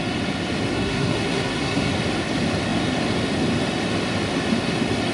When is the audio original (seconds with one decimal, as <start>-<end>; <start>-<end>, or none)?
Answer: 0.0-0.7; 1.9-5.1